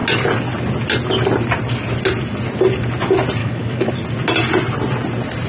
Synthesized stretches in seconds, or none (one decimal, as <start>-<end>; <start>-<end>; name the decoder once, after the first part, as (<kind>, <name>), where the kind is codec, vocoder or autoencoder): 3.4-3.9 (autoencoder, DAC-VAE)